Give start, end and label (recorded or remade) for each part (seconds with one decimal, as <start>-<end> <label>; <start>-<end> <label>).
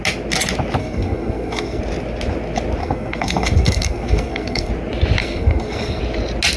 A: 0.0-0.8 recorded; 0.8-1.8 remade; 1.8-2.8 recorded; 2.8-4.7 remade; 4.7-5.2 recorded; 5.2-6.0 remade; 6.0-6.6 recorded